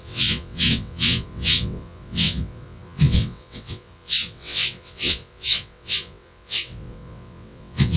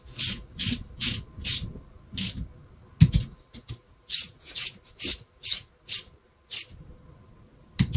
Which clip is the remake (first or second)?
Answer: first